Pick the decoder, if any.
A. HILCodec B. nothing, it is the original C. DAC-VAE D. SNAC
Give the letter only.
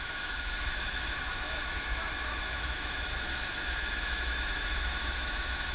C